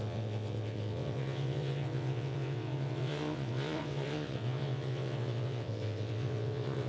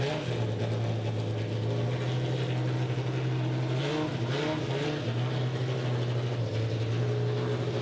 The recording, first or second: second